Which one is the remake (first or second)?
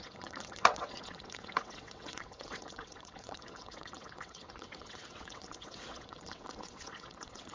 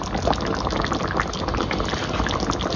first